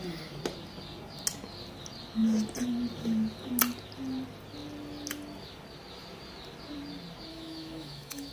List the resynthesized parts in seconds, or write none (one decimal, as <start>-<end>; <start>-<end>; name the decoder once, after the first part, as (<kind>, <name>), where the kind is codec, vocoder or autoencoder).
7.3-8.3 (autoencoder, DAC-VAE)